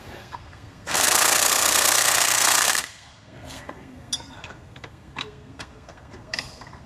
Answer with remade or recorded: remade